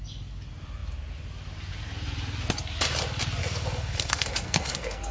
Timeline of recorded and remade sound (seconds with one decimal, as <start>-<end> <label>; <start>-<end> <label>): 0.0-3.4 recorded; 3.4-5.1 remade